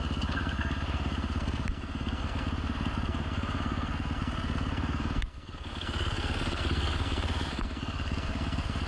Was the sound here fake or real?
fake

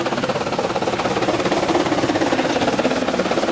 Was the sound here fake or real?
real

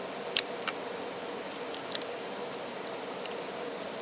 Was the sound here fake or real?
real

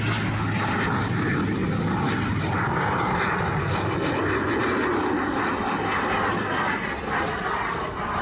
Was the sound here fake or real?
real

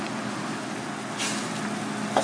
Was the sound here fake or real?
real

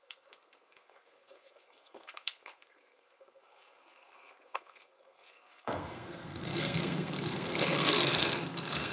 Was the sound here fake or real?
fake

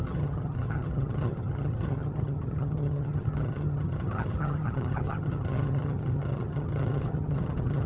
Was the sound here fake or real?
fake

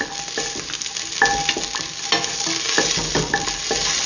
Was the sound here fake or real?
real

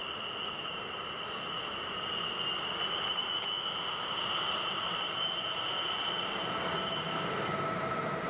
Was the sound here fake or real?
real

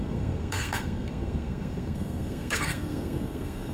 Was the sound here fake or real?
fake